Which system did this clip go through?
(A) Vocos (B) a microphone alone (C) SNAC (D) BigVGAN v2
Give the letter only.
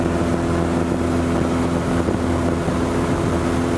B